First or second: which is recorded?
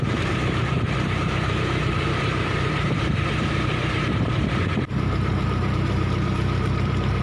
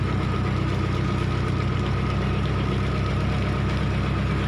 second